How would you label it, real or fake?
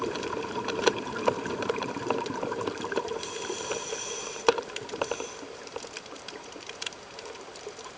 fake